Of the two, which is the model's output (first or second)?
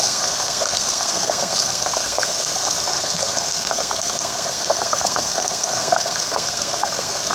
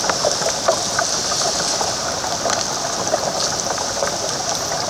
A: first